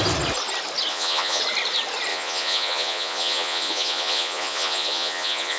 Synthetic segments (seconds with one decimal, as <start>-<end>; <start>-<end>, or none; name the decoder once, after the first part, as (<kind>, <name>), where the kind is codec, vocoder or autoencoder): 0.9-1.4 (vocoder, Vocos); 2.1-5.6